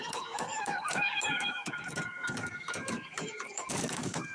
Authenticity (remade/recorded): remade